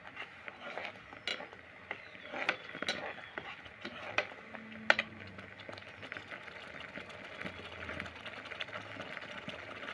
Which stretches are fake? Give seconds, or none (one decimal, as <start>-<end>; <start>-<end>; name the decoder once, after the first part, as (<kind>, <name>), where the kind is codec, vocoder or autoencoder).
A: none